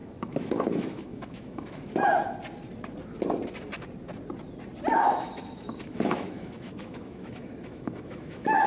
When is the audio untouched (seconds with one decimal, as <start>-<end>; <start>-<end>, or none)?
1.8-4.9